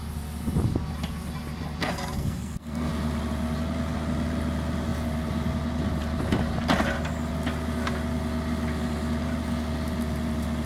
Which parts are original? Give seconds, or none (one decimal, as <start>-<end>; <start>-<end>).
0.0-1.8; 2.9-10.7